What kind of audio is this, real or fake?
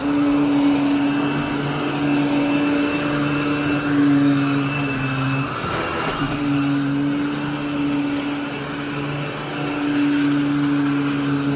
real